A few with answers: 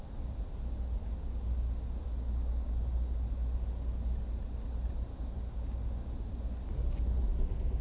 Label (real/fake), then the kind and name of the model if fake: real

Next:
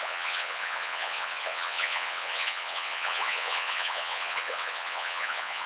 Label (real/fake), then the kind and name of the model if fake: fake, vocoder, WaveNeXt